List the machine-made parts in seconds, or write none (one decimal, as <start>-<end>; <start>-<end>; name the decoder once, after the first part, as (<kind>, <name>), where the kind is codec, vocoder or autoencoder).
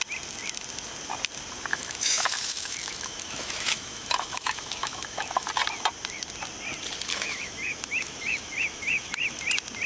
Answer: 1.7-5.5 (autoencoder, DAC-VAE); 7.1-9.4